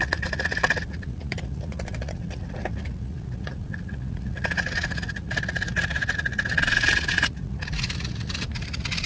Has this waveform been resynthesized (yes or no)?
yes